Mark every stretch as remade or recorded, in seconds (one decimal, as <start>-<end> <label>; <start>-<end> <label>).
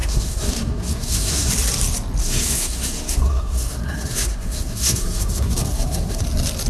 0.0-1.5 remade; 1.5-2.2 recorded; 2.2-6.2 remade; 6.2-6.7 recorded